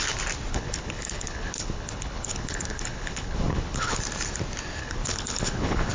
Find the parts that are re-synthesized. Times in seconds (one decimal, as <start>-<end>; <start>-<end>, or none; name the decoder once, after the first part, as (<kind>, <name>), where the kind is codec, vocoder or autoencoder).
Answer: 0.5-4.0 (codec, HILCodec); 4.8-5.9